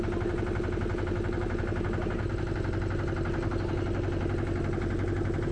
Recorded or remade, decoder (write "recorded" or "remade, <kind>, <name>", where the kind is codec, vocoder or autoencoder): recorded